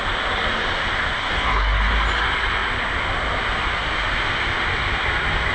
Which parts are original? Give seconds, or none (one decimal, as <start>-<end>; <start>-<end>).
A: 0.0-1.2; 1.8-5.5